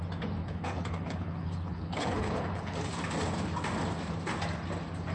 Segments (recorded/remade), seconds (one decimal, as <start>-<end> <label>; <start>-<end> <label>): 0.0-0.4 recorded; 0.4-2.8 remade; 2.8-5.1 recorded